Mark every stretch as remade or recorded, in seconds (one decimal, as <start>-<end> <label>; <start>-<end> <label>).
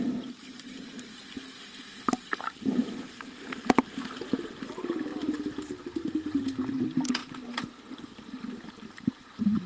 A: 0.0-9.7 recorded